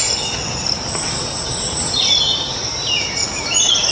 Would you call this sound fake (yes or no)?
no